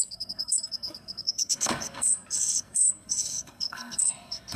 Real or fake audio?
fake